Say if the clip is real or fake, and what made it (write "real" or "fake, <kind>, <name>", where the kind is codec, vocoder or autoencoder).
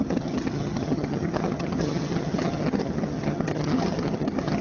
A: fake, vocoder, HiFi-GAN